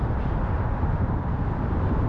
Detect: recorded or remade remade